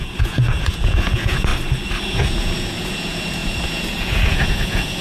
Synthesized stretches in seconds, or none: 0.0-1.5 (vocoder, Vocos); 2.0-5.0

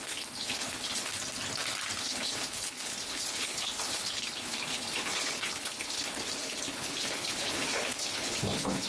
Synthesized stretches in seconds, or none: 0.0-1.1 (codec, HILCodec); 2.0-8.9